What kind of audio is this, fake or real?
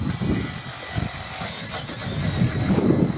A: real